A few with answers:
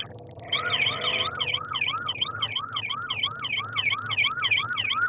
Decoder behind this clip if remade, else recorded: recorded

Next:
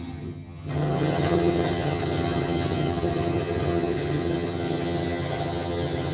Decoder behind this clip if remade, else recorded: remade, vocoder, HiFi-GAN